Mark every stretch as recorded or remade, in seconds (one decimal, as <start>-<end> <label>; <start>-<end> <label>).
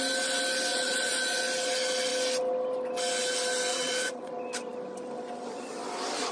0.0-0.7 recorded; 0.7-1.4 remade; 1.4-3.7 recorded; 3.7-4.3 remade; 4.3-6.3 recorded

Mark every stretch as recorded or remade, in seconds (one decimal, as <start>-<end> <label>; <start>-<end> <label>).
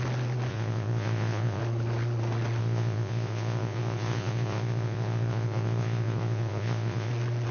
0.0-0.5 recorded; 0.5-1.6 remade; 1.6-2.6 recorded; 2.6-7.1 remade; 7.1-7.5 recorded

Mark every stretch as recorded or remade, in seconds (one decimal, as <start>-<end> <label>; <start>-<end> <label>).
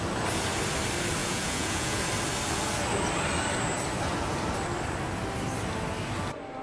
0.0-1.2 recorded; 1.2-2.0 remade; 2.0-6.6 recorded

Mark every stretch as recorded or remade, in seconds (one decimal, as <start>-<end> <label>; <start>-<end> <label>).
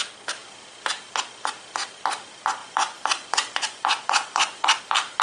0.0-2.6 recorded; 2.6-4.8 remade; 4.8-5.2 recorded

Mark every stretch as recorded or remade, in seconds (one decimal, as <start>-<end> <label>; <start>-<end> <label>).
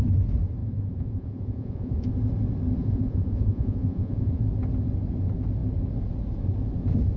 0.0-0.6 recorded; 0.6-2.1 remade; 2.1-2.8 recorded; 2.8-4.4 remade; 4.4-7.2 recorded